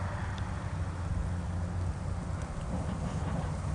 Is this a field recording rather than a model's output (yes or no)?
yes